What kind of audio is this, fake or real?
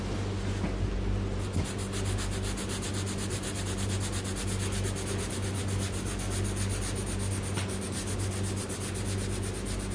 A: real